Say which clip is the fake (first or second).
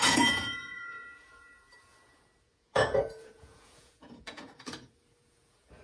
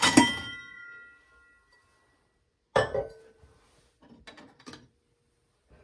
first